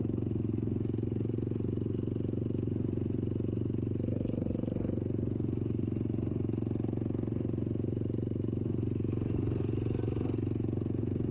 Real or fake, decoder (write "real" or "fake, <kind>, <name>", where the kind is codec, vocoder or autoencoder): real